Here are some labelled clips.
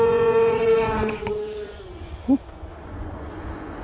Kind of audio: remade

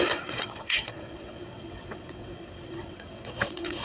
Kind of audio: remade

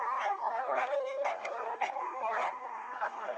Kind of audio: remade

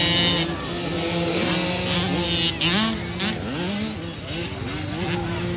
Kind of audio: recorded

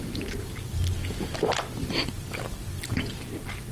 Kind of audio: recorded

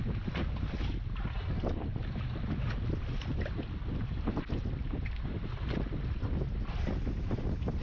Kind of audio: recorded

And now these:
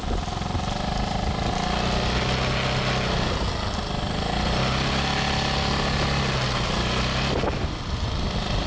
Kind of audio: recorded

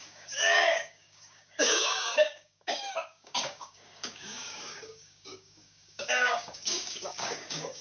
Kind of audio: remade